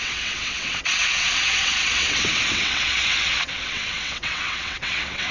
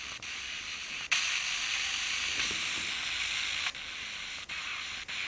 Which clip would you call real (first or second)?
second